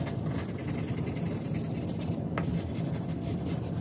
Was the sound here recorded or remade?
recorded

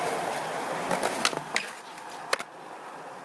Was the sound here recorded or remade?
recorded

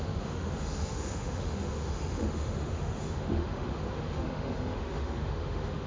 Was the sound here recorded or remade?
remade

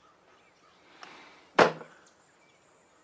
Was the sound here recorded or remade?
recorded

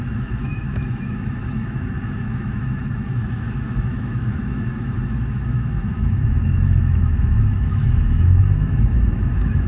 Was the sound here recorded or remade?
remade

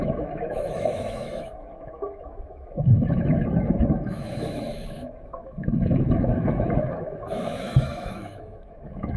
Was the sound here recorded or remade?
remade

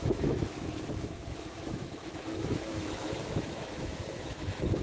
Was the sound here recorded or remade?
remade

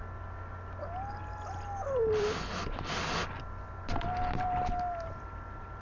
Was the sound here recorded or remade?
recorded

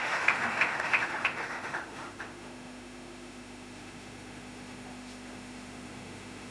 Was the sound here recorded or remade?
remade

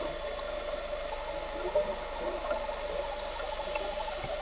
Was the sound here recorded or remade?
recorded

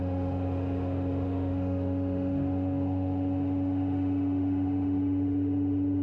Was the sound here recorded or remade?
remade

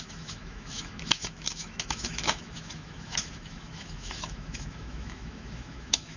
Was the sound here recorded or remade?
remade